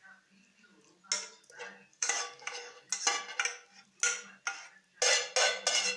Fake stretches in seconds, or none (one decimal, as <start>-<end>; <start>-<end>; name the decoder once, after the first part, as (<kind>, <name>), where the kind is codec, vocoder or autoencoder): 1.9-2.9 (codec, DAC)